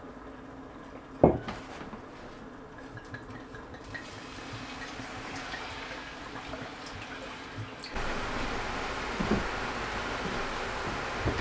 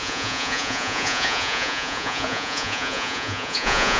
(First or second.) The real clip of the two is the first